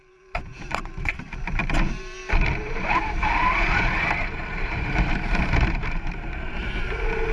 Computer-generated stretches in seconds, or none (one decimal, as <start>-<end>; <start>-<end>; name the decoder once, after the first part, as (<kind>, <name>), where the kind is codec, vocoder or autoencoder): 0.0-7.3 (vocoder, BigVGAN v2)